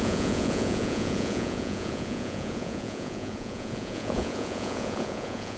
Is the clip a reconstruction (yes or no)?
yes